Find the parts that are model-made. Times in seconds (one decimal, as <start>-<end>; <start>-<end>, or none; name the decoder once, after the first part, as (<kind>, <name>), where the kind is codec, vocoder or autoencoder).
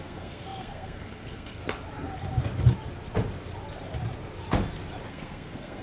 0.0-1.6 (codec, SNAC); 5.1-5.8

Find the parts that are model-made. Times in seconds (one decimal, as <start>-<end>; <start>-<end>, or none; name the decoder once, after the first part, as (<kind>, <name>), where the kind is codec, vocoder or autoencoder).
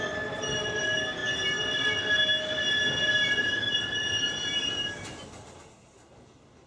none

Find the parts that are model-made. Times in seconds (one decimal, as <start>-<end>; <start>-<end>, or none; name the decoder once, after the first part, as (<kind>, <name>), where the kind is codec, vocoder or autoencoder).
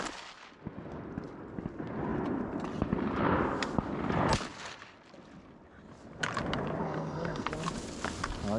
6.8-7.5 (codec, SNAC)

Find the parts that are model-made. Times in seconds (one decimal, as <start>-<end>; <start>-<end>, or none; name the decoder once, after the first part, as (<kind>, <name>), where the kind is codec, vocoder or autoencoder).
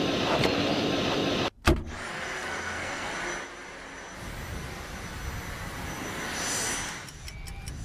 2.1-3.1 (codec, SNAC)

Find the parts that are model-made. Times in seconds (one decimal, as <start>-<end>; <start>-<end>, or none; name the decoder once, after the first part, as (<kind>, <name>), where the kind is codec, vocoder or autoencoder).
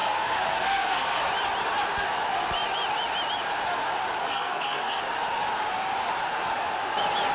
0.0-1.2 (codec, SNAC); 4.2-5.0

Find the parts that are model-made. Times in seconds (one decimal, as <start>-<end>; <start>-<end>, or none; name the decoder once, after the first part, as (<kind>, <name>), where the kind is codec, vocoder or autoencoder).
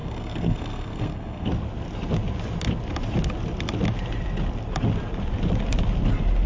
0.0-1.5 (codec, SNAC)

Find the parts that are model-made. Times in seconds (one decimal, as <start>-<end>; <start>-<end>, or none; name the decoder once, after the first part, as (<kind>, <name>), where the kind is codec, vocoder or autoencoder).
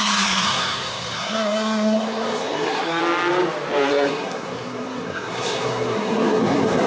0.0-3.0 (codec, SNAC); 3.9-6.9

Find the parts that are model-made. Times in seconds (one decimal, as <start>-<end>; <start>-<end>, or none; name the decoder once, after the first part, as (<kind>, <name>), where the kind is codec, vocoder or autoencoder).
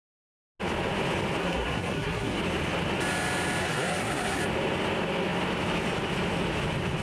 1.4-2.4 (codec, SNAC); 3.6-4.4